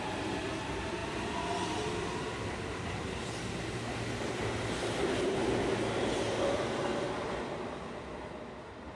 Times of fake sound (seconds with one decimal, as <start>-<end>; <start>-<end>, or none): none